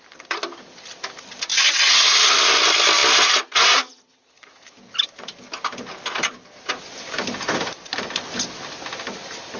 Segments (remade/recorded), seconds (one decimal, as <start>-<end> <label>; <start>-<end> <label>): 0.0-1.5 remade; 1.5-2.4 recorded; 2.4-3.0 remade; 3.0-6.8 recorded; 6.8-9.6 remade

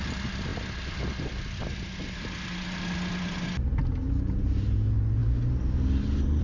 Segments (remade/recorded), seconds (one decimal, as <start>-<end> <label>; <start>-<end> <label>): 0.0-6.4 recorded

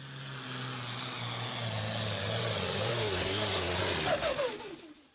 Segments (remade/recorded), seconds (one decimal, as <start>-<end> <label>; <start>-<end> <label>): 0.0-2.9 recorded; 2.9-3.8 remade; 3.8-5.1 recorded

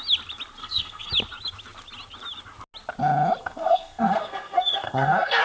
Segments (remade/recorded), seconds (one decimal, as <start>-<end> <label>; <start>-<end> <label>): 0.0-0.6 recorded; 0.6-1.1 remade; 1.1-3.4 recorded; 3.4-5.4 remade